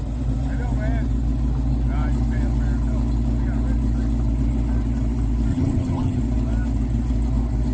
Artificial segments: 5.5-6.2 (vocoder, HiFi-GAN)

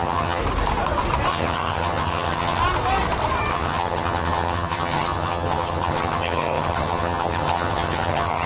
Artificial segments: 0.0-0.4 (vocoder, HiFi-GAN); 1.3-2.6; 3.5-8.5

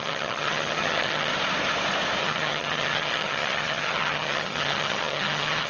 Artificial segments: 0.0-1.3 (vocoder, HiFi-GAN); 2.2-5.7

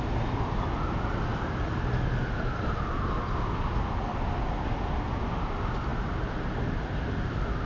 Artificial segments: none

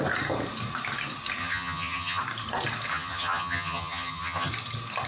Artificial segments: 1.4-2.2 (vocoder, HiFi-GAN); 2.9-4.5

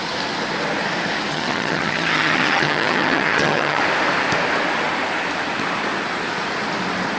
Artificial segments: 1.3-3.8 (vocoder, HiFi-GAN)

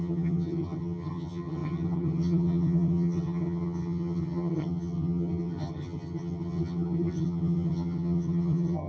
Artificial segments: 0.0-8.9 (vocoder, HiFi-GAN)